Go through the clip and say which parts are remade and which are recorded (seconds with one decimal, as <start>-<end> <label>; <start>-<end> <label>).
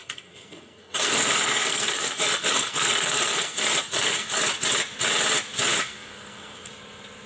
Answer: 0.0-4.4 remade; 4.4-5.7 recorded; 5.7-6.7 remade; 6.7-7.3 recorded